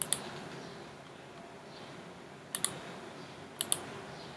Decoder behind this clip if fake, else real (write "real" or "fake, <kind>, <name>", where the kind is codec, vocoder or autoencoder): real